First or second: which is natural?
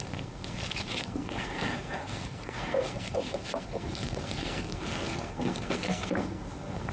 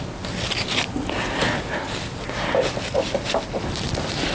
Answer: second